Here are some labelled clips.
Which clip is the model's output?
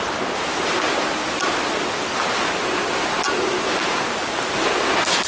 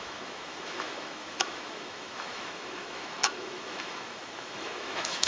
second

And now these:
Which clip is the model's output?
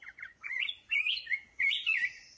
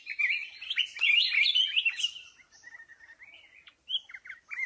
first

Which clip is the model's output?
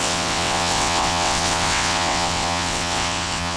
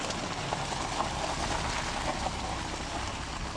first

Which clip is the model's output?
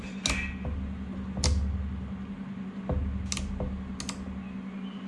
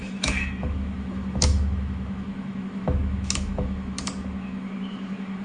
second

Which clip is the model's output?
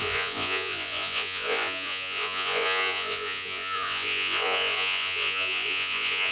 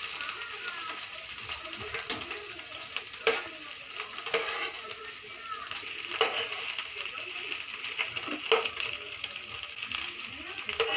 first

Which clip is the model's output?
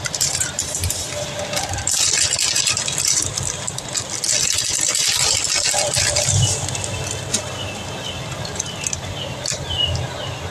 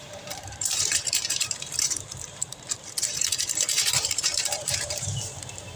second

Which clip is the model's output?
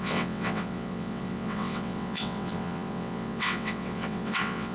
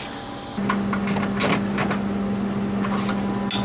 first